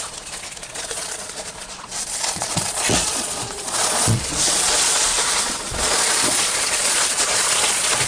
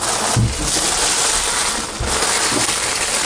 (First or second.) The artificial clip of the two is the first